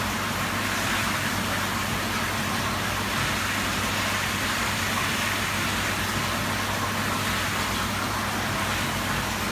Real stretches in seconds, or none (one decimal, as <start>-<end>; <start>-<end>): 0.0-9.5